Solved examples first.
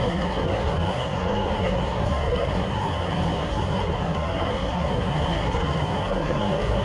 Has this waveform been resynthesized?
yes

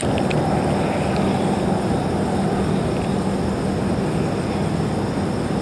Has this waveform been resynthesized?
no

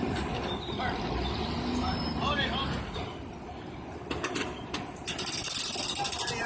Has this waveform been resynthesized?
no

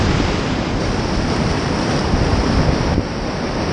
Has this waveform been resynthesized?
no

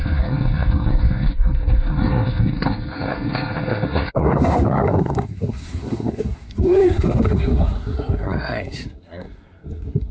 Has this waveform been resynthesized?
yes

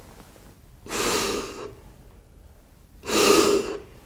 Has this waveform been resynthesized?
no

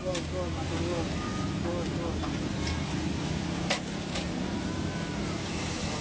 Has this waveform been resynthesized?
no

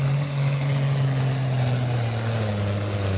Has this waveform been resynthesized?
no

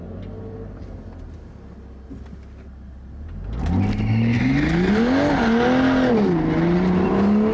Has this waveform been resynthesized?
no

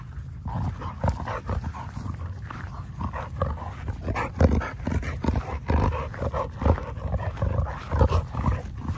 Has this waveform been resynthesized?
no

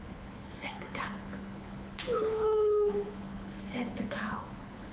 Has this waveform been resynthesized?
yes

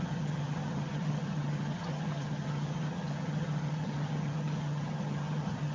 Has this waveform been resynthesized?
yes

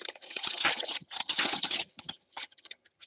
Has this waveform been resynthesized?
yes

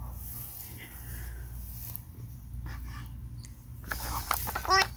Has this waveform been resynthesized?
no